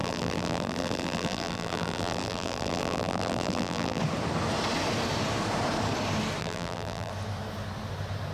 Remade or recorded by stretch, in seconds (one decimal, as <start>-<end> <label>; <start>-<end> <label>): 0.0-4.0 remade; 4.0-6.4 recorded; 6.4-7.1 remade; 7.1-8.3 recorded